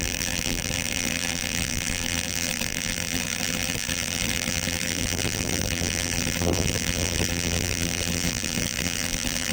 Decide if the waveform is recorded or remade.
remade